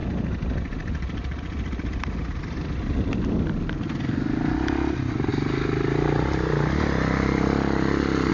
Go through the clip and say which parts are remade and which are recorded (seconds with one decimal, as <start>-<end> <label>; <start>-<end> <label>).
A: 0.0-8.3 recorded